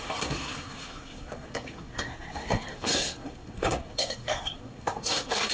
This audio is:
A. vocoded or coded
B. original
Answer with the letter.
A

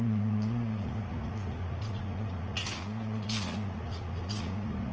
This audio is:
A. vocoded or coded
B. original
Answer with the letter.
A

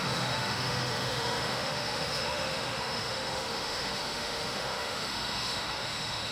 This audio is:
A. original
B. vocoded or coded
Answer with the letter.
B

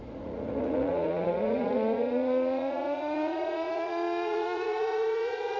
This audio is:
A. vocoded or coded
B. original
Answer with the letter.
A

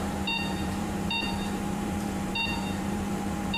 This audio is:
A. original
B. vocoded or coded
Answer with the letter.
B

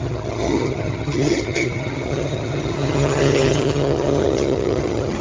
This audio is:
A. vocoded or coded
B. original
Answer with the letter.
A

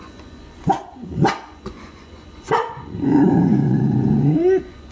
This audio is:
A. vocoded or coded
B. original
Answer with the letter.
A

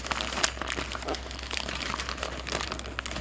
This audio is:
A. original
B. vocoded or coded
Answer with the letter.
A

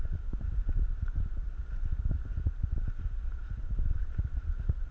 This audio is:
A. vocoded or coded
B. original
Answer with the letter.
A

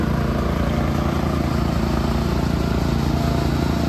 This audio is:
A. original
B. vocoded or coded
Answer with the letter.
A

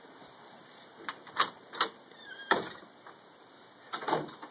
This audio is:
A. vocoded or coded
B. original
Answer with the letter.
A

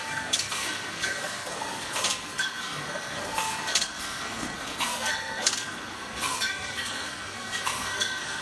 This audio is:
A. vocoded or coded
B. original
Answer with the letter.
A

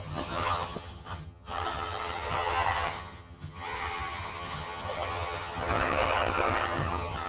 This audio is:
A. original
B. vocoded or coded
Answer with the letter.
B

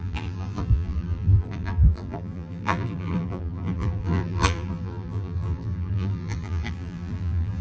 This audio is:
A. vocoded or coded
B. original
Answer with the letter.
A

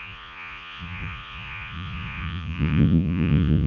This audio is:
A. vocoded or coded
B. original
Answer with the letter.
A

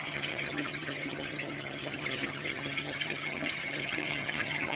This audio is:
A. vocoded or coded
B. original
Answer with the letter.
A